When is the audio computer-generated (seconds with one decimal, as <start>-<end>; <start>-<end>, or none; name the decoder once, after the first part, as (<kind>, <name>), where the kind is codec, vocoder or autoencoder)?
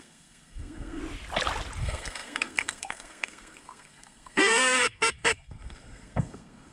0.0-1.0 (codec, SNAC); 1.8-6.7